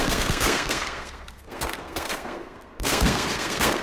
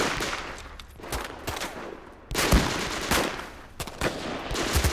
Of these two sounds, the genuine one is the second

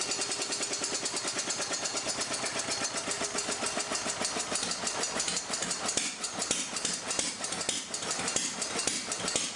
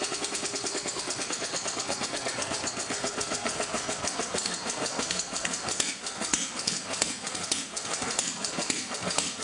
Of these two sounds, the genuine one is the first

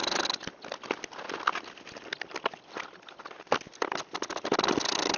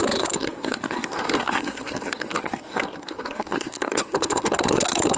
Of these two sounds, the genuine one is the first